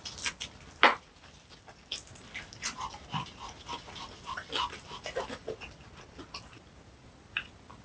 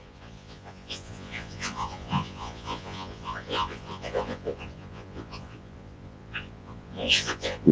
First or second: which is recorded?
first